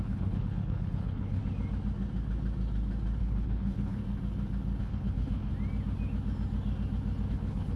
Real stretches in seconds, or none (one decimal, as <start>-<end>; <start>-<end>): 1.4-3.2; 4.0-4.8; 5.5-7.3